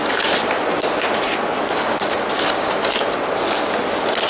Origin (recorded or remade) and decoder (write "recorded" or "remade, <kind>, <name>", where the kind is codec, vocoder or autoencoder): recorded